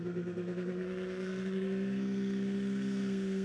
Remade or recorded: remade